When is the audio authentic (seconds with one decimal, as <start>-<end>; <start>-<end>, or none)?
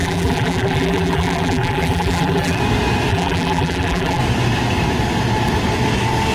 2.6-3.1; 4.2-6.3